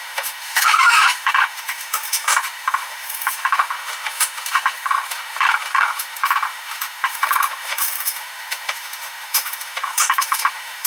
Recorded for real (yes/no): no